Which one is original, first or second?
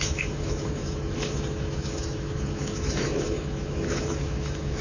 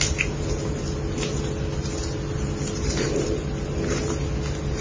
second